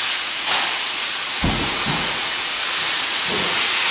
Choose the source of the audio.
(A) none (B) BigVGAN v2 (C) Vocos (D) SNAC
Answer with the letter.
C